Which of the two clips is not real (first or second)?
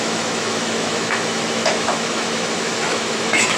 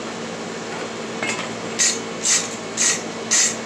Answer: first